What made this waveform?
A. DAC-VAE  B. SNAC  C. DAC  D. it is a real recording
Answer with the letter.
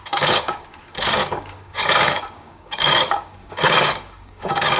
C